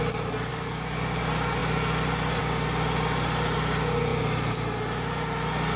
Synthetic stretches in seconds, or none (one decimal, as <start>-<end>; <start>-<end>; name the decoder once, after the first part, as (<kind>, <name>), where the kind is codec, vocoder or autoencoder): 0.5-1.2 (codec, DAC)